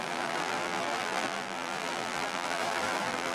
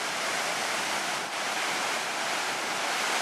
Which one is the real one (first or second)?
second